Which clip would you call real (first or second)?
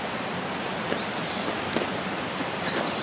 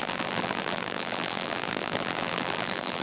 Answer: first